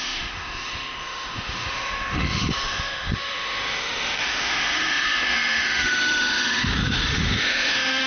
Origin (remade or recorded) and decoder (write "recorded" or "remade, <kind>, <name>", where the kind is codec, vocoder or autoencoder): remade, autoencoder, DAC-VAE